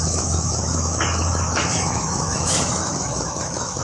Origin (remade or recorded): remade